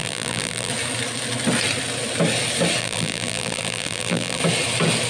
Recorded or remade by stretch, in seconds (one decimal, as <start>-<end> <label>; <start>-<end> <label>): 0.0-0.7 remade; 0.7-2.8 recorded; 2.8-4.4 remade; 4.4-5.1 recorded